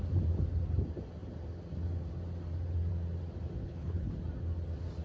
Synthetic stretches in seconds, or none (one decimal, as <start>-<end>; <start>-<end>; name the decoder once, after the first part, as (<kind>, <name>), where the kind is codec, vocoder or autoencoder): 3.6-4.1 (codec, HILCodec)